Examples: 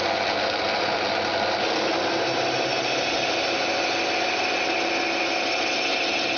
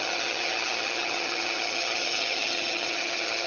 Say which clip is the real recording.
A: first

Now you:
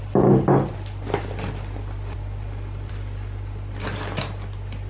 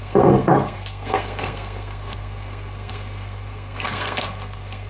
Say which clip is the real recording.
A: first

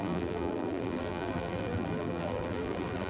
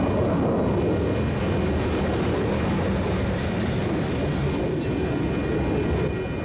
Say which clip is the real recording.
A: second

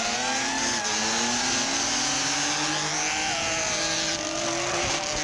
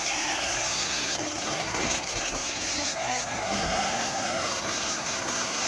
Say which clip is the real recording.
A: first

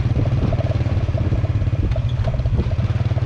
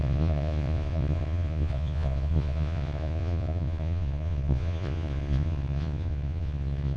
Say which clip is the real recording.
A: first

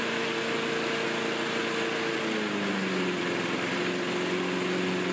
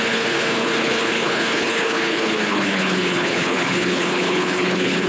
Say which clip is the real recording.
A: first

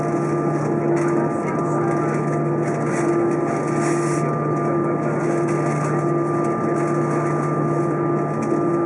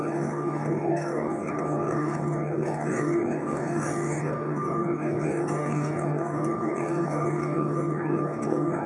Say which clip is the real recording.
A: first